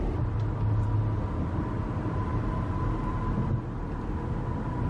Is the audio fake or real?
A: real